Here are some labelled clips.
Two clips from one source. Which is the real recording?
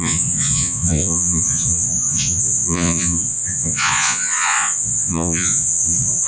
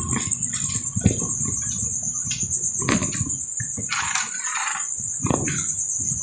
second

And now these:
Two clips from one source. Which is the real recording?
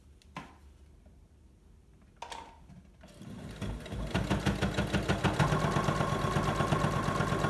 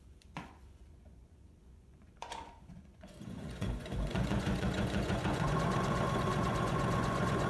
first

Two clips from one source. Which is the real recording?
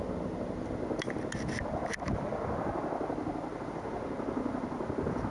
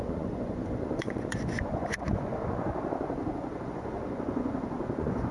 first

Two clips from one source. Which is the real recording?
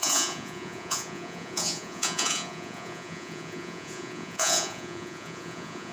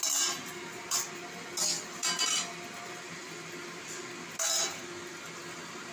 second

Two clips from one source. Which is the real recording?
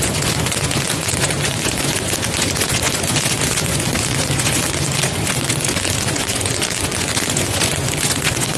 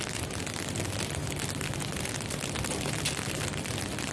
second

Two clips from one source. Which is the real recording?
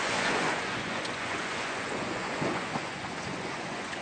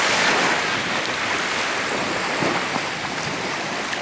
second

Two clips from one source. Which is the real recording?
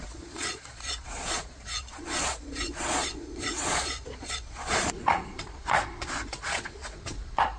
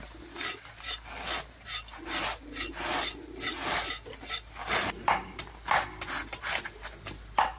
second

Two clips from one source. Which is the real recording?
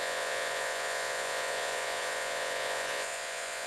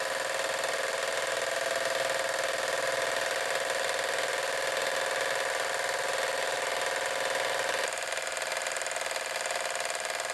second